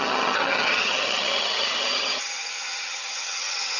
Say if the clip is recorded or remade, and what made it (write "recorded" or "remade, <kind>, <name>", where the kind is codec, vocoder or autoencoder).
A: remade, vocoder, HiFi-GAN